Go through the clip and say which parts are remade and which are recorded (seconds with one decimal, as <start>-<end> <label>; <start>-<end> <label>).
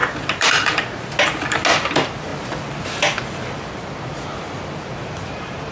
0.0-1.1 remade; 1.1-5.7 recorded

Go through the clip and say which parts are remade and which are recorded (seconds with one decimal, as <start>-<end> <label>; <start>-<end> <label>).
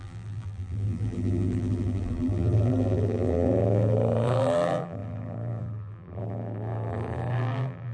0.0-7.9 remade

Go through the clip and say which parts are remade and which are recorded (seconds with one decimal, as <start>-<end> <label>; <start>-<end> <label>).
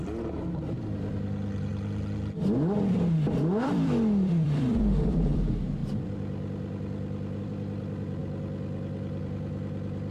0.0-1.7 remade; 1.7-3.6 recorded; 3.6-5.8 remade; 5.8-7.4 recorded; 7.4-8.2 remade; 8.2-9.2 recorded; 9.2-10.1 remade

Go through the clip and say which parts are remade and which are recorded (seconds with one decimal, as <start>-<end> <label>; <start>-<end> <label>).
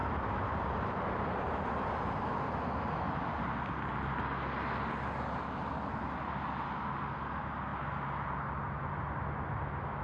0.0-1.9 remade; 1.9-7.7 recorded; 7.7-8.4 remade; 8.4-10.0 recorded